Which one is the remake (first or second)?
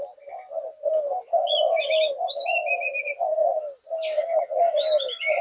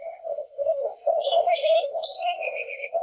second